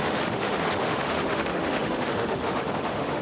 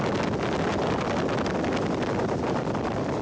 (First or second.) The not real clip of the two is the first